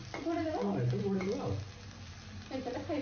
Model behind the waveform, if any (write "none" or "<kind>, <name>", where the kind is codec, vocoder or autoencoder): none